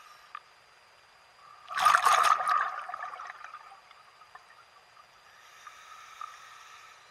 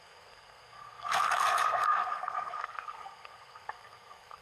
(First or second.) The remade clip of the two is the second